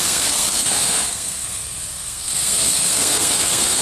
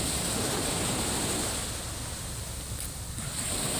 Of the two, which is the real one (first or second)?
second